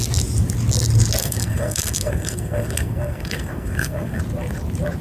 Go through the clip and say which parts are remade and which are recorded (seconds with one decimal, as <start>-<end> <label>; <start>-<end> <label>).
0.0-1.2 recorded; 1.2-4.2 remade; 4.2-5.0 recorded